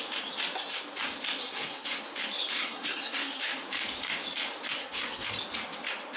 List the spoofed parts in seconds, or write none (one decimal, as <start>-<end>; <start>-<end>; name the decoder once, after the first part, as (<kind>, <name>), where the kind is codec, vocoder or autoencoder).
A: 1.4-2.0 (codec, SNAC); 2.5-3.4; 4.8-5.3

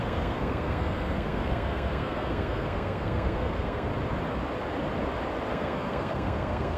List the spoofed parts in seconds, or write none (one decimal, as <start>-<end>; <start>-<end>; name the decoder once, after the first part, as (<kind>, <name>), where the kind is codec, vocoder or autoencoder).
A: 0.0-3.9 (codec, SNAC); 5.5-6.8

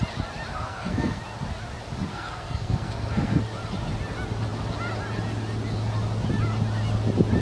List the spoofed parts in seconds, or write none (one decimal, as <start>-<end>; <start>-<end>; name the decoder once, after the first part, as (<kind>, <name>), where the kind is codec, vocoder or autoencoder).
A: 0.5-1.2 (codec, SNAC); 2.1-3.4

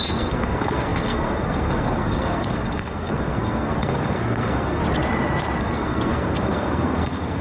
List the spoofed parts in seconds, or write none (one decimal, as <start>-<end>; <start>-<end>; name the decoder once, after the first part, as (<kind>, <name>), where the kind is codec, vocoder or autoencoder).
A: 0.0-4.8 (codec, SNAC); 5.6-7.4